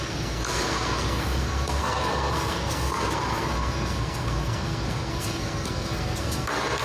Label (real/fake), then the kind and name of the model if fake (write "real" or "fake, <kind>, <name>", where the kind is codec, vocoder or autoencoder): fake, codec, SNAC